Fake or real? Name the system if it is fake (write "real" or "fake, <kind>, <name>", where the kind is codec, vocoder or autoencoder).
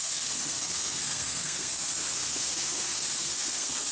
fake, codec, SNAC